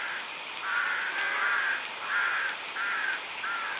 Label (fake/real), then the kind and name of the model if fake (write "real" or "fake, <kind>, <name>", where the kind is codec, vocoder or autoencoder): real